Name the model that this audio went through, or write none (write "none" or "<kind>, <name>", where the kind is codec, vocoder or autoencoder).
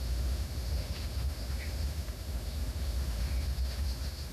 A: autoencoder, DAC-VAE